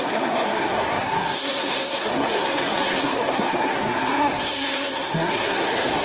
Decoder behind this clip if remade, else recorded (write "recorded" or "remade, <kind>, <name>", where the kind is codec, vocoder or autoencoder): remade, codec, SNAC